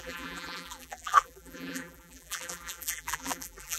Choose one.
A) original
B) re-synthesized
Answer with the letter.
B